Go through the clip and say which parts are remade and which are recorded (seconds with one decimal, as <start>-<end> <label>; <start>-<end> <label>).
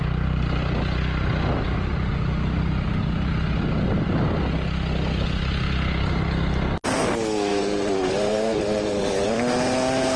0.0-7.5 recorded; 7.5-9.3 remade; 9.3-10.2 recorded